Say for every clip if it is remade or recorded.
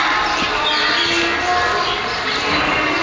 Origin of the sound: recorded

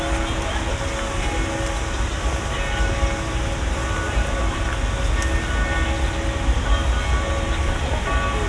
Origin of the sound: recorded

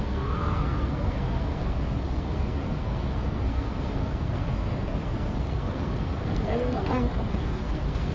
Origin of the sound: remade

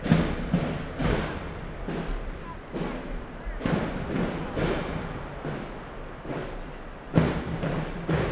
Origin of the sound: recorded